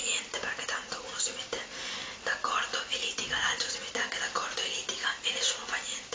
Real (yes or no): yes